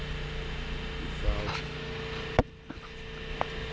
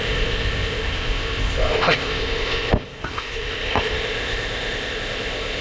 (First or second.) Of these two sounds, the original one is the first